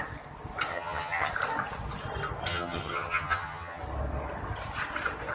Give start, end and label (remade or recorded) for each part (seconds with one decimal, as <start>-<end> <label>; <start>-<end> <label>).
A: 0.0-0.7 recorded; 0.7-1.3 remade; 1.3-2.5 recorded; 2.5-3.8 remade; 3.8-5.3 recorded